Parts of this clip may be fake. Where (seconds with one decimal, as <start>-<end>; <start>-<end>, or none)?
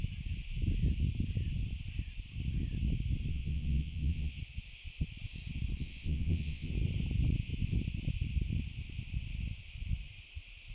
3.3-4.4; 5.8-6.7